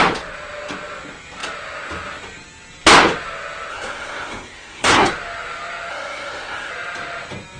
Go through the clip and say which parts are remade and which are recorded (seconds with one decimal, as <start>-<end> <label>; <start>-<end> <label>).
0.0-3.7 recorded; 3.7-5.1 remade; 5.1-5.9 recorded; 5.9-6.7 remade; 6.7-7.6 recorded